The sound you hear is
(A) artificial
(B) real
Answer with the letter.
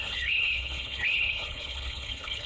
A